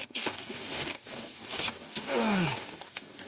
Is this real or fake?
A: fake